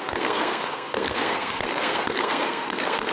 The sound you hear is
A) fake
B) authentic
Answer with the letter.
A